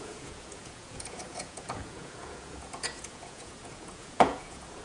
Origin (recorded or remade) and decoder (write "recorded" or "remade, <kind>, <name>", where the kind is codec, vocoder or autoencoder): remade, vocoder, Vocos